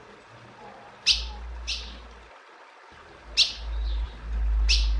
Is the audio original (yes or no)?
yes